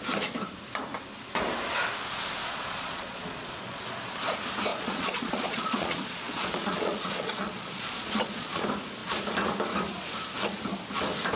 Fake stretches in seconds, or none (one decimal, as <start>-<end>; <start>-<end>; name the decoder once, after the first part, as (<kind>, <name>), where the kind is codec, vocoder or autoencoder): 2.4-3.8 (vocoder, Vocos); 4.7-8.6